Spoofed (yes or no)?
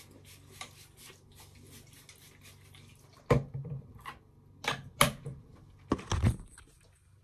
no